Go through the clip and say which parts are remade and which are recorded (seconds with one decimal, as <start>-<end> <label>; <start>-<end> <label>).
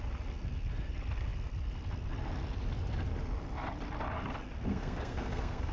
0.0-4.7 recorded; 4.7-5.7 remade